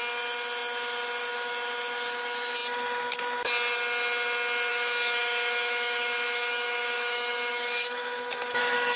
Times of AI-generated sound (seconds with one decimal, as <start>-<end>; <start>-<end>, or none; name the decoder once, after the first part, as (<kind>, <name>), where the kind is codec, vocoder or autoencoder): 4.7-8.6 (autoencoder, DAC-VAE)